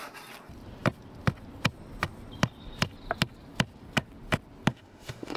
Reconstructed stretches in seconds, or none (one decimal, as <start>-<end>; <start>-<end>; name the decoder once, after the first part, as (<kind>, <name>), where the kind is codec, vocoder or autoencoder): 4.7-5.4 (autoencoder, DAC-VAE)